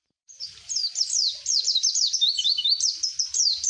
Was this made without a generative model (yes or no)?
no